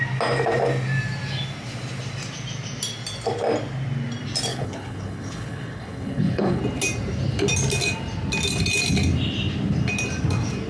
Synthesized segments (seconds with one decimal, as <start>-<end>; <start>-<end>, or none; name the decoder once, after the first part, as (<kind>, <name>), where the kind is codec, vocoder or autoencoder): 4.5-6.6 (codec, HILCodec)